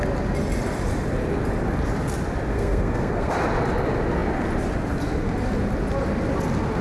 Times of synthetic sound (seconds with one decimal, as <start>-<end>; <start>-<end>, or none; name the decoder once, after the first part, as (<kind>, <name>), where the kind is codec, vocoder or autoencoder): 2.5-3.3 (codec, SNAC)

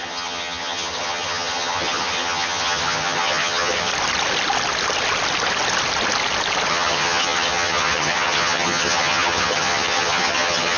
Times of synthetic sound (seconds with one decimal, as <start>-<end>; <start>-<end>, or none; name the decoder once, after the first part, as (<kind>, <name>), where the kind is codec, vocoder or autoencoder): 0.0-3.9 (vocoder, HiFi-GAN); 6.7-10.8

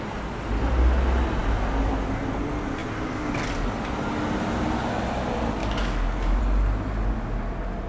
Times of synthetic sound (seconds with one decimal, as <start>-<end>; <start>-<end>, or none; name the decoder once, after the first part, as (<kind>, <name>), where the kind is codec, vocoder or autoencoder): 5.6-6.4 (codec, DAC)

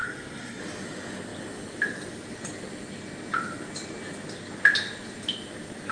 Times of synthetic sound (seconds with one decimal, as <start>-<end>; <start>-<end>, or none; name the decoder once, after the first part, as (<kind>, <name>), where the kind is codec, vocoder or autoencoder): 0.0-0.6 (codec, SNAC)

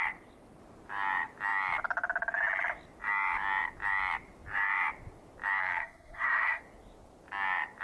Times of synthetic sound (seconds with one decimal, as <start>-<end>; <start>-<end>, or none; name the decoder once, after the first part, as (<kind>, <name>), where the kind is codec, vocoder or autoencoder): 5.6-6.6 (codec, SNAC)